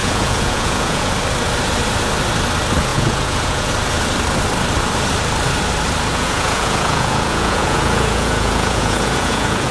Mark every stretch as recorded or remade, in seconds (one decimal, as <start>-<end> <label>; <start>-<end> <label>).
0.0-1.1 remade; 1.1-2.9 recorded; 2.9-3.7 remade; 3.7-6.1 recorded; 6.1-9.7 remade